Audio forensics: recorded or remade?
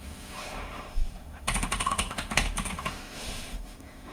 remade